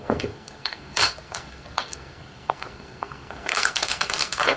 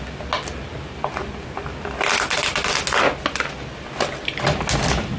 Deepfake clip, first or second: first